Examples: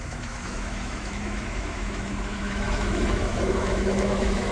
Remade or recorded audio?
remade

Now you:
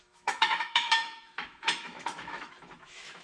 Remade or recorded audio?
remade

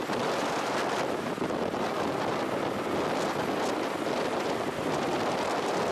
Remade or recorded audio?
recorded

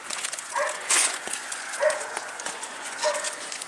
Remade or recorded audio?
remade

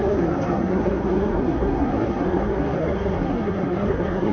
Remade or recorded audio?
remade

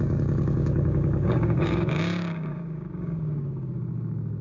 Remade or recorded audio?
remade